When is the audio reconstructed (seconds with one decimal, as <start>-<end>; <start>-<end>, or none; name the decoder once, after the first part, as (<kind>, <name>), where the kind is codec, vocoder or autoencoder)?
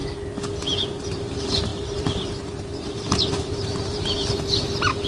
1.0-5.1 (vocoder, BigVGAN v2)